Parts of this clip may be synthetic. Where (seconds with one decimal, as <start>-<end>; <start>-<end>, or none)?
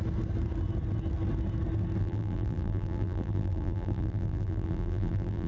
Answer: 2.0-5.5